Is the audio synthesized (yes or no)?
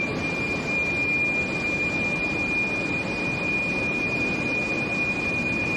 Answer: yes